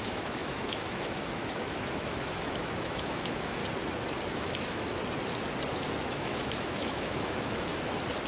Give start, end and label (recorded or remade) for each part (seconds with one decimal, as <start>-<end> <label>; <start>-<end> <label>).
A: 0.0-3.6 remade; 3.6-4.3 recorded; 4.3-5.0 remade; 5.0-5.7 recorded; 5.7-7.7 remade; 7.7-8.3 recorded